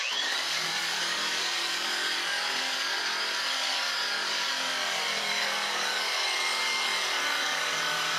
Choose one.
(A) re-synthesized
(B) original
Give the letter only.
A